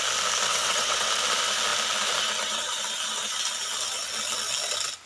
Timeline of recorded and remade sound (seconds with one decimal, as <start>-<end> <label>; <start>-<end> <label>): 0.0-0.5 recorded; 0.5-1.1 remade; 1.1-5.1 recorded